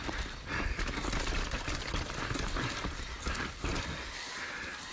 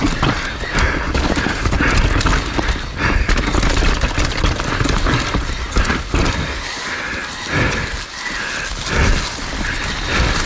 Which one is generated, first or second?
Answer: first